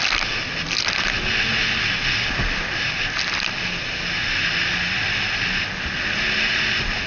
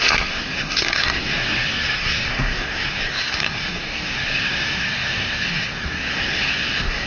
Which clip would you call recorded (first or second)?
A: first